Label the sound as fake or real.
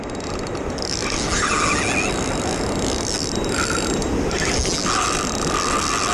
real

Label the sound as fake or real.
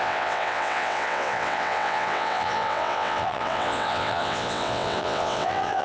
fake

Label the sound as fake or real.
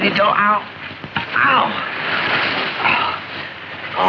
real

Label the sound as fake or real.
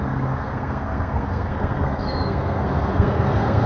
fake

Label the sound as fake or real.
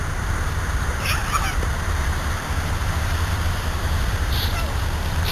fake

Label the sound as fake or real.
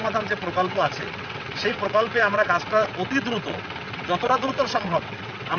fake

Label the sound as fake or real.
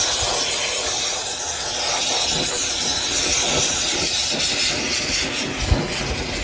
real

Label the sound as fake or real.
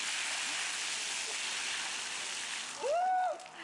real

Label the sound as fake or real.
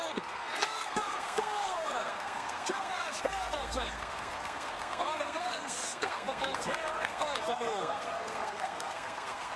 fake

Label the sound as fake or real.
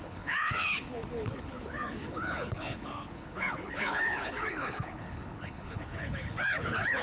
fake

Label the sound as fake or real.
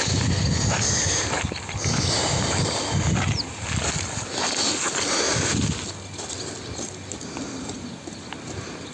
real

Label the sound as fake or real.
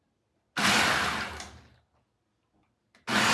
real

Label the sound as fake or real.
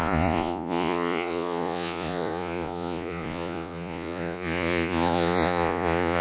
fake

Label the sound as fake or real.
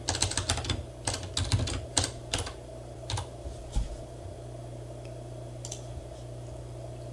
real